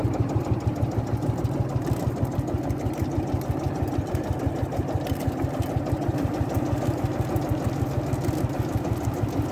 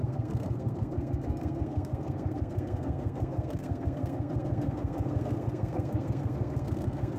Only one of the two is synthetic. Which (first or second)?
second